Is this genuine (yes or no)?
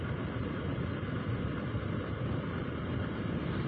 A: yes